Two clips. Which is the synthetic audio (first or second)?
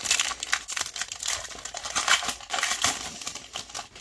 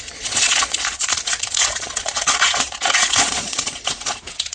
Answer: second